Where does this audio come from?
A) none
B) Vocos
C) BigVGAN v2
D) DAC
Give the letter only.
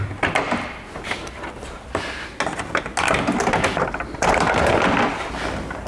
A